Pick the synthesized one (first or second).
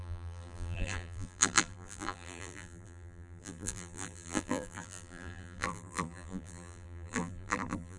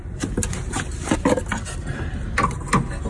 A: first